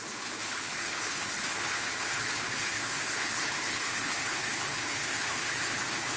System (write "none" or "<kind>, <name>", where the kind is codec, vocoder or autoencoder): codec, HILCodec